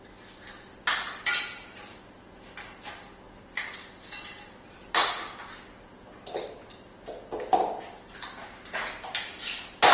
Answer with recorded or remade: recorded